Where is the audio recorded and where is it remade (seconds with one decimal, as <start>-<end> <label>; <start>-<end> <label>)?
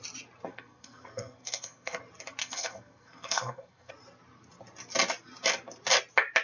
0.0-0.5 recorded; 0.5-2.0 remade; 2.0-2.4 recorded; 2.4-3.9 remade; 3.9-6.4 recorded